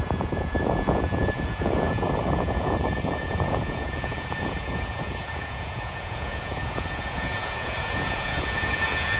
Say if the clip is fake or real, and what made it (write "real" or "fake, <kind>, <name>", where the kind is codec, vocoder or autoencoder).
fake, vocoder, Vocos